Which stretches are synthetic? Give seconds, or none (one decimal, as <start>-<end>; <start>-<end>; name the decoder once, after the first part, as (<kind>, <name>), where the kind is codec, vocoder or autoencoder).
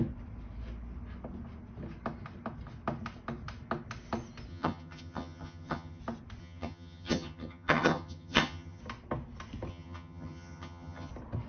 4.5-6.0 (vocoder, HiFi-GAN); 6.4-8.8; 9.7-11.1